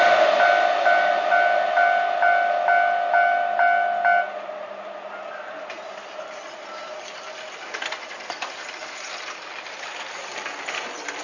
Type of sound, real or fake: real